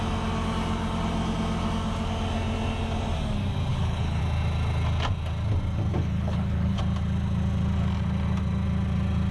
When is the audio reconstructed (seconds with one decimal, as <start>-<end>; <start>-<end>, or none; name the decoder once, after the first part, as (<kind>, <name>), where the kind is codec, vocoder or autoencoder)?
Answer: 3.7-4.2 (codec, HILCodec); 5.9-6.8